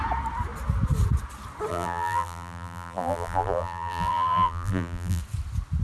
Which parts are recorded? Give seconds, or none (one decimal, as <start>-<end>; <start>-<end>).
0.0-1.7; 5.2-5.8